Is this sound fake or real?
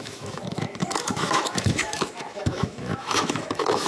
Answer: fake